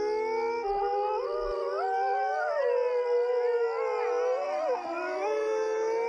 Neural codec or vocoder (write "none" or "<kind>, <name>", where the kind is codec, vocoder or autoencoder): none